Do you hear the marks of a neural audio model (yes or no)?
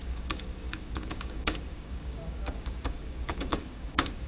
yes